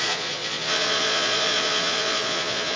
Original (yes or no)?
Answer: no